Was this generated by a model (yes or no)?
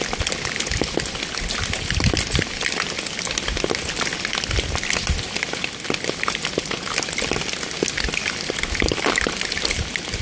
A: no